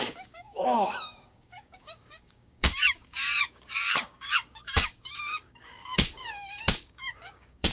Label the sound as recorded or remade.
remade